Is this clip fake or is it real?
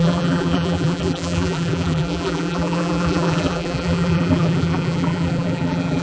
fake